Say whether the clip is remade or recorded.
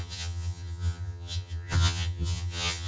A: remade